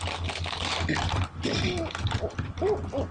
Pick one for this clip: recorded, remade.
recorded